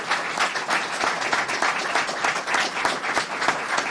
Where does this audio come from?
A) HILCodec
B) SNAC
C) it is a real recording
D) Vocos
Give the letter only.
C